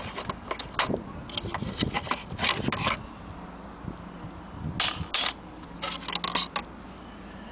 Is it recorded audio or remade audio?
recorded